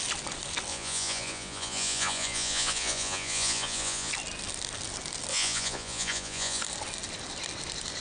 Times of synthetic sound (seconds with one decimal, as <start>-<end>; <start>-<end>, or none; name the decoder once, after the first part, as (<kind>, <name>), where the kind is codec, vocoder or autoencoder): 0.7-4.1 (vocoder, Vocos); 5.3-6.6